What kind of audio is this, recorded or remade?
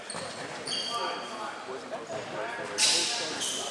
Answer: recorded